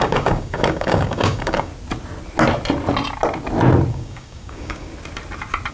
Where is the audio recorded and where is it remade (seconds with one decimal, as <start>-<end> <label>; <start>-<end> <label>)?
0.0-1.7 remade; 1.7-3.9 recorded; 3.9-4.9 remade; 4.9-5.7 recorded